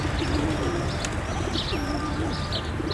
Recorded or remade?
recorded